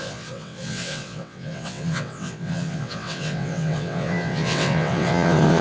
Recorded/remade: remade